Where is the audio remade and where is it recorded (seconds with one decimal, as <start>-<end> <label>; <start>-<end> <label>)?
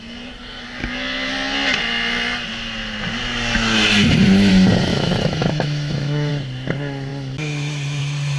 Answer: 0.0-4.9 recorded; 4.9-6.3 remade; 6.3-8.4 recorded